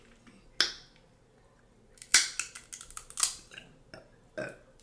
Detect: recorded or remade recorded